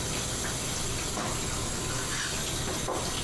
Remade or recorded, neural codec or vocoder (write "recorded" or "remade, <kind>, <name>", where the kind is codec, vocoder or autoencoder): recorded